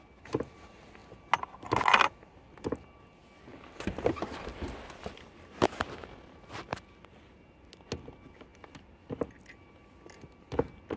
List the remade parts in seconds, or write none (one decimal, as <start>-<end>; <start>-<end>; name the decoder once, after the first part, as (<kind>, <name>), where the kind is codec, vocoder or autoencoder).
none